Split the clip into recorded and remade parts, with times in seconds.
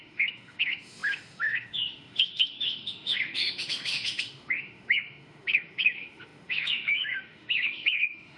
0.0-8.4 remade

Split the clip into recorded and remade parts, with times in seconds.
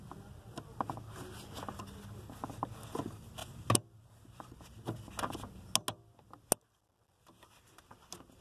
0.0-8.4 recorded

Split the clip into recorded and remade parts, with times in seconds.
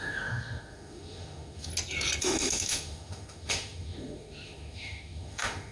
0.0-1.7 remade; 1.7-2.2 recorded; 2.2-5.7 remade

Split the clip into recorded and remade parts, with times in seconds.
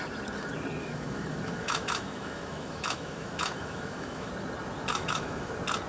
0.0-0.8 recorded; 0.8-4.3 remade; 4.3-4.9 recorded; 4.9-5.5 remade; 5.5-5.9 recorded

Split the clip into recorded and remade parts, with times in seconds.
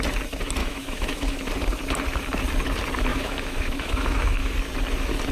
0.0-0.6 recorded; 0.6-1.5 remade; 1.5-3.1 recorded; 3.1-4.5 remade; 4.5-5.3 recorded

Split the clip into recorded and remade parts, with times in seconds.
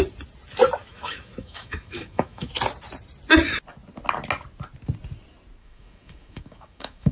0.0-0.8 recorded; 0.8-2.5 remade; 2.5-5.6 recorded; 5.6-7.1 remade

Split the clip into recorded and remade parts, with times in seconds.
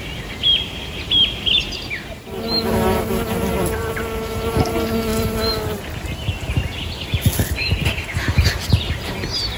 0.0-9.6 recorded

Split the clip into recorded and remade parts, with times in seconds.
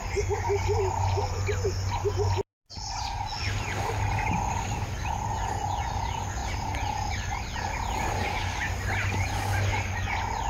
0.0-10.5 recorded